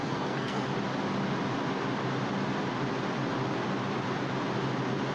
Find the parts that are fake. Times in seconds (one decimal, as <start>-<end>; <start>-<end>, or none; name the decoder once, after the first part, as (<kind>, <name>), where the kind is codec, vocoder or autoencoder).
0.0-0.7 (codec, SNAC)